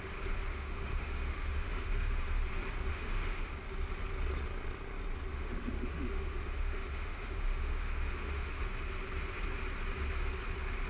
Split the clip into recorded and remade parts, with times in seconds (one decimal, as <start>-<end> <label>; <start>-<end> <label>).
0.0-0.5 recorded; 0.5-2.4 remade; 2.4-2.9 recorded; 2.9-3.5 remade; 3.5-5.3 recorded; 5.3-8.6 remade; 8.6-10.9 recorded